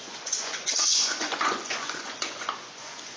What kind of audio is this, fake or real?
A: fake